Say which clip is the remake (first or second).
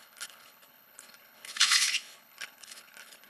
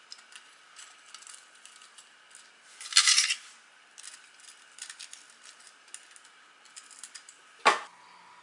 first